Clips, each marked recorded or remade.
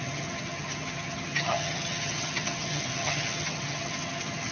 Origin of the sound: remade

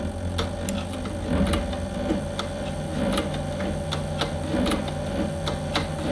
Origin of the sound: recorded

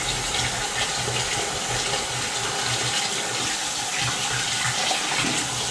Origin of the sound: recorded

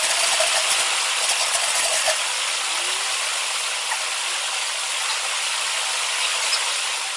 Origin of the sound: recorded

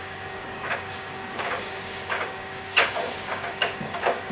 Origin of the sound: remade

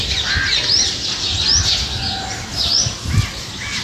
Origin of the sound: recorded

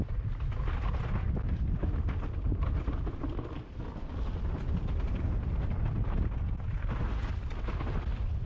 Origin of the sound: recorded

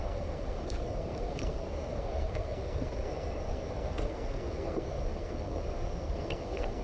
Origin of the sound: remade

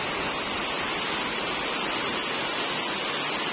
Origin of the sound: recorded